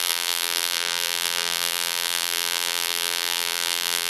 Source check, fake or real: fake